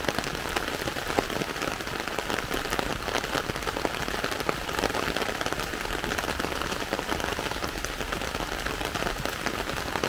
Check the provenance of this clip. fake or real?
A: real